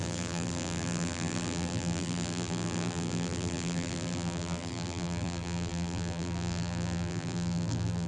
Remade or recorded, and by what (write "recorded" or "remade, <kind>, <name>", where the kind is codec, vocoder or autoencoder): remade, vocoder, BigVGAN v2